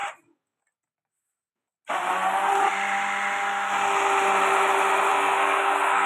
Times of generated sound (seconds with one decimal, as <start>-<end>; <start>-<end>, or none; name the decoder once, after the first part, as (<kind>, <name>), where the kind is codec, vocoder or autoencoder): 5.1-6.1 (codec, SNAC)